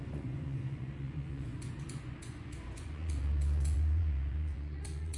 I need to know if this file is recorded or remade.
remade